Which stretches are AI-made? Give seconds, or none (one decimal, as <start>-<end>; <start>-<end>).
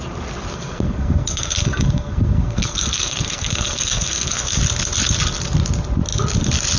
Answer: 0.5-4.6